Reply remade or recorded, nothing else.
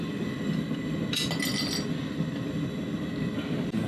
recorded